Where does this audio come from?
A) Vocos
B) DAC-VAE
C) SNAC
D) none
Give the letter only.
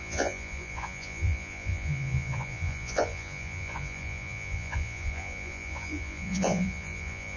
A